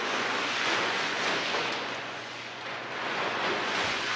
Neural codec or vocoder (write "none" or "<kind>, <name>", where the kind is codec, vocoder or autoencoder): vocoder, Vocos